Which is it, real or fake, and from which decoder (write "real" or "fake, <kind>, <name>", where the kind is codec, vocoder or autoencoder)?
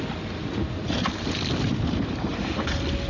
real